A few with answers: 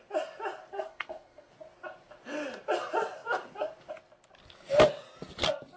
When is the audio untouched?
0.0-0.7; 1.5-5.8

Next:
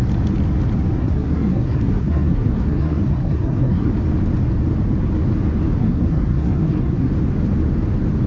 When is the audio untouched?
0.0-1.0; 3.9-5.8; 7.1-8.3